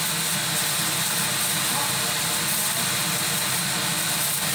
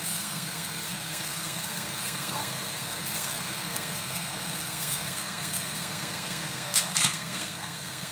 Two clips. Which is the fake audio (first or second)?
second